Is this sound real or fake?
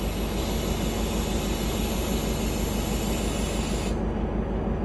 real